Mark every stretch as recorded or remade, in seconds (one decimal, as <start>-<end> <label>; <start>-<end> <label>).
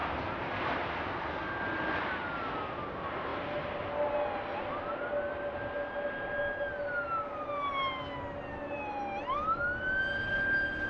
0.0-10.9 recorded